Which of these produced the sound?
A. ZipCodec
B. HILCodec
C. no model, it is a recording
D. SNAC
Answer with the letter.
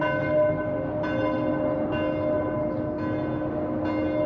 C